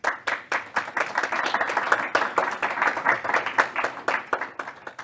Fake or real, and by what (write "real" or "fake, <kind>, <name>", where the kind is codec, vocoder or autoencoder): real